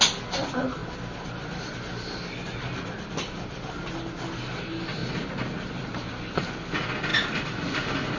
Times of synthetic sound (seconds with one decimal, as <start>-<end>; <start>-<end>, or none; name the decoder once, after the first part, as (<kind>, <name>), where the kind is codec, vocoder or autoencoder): none